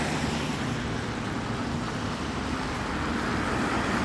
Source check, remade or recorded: recorded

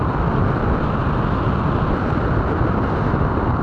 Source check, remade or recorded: recorded